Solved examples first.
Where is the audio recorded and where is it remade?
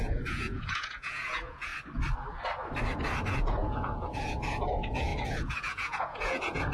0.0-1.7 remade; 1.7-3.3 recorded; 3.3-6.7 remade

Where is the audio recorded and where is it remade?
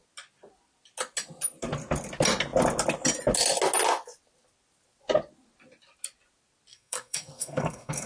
0.0-6.7 recorded; 6.7-8.1 remade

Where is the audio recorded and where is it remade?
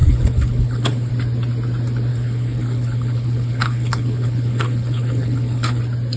0.0-1.1 remade; 1.1-2.1 recorded; 2.1-5.8 remade; 5.8-6.2 recorded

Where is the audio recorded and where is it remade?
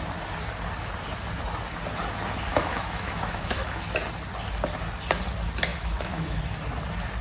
0.0-2.5 recorded; 2.5-3.8 remade; 3.8-5.7 recorded; 5.7-6.4 remade; 6.4-7.2 recorded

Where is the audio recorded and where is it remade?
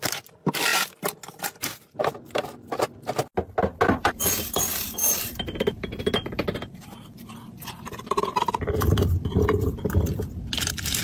0.0-0.7 remade; 0.7-4.0 recorded; 4.0-11.0 remade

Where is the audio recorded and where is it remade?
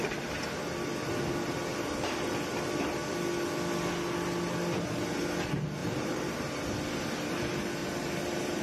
0.0-1.7 recorded; 1.7-2.3 remade; 2.3-5.8 recorded; 5.8-6.6 remade; 6.6-7.8 recorded; 7.8-8.6 remade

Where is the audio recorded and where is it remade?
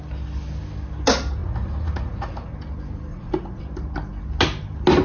0.0-1.4 recorded; 1.4-2.5 remade; 2.5-3.1 recorded; 3.1-3.6 remade; 3.6-5.0 recorded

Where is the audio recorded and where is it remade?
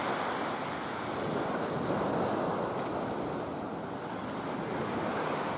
0.0-5.6 recorded